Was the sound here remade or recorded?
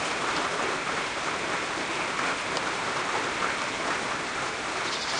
remade